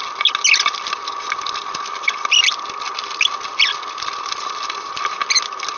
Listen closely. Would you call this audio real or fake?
real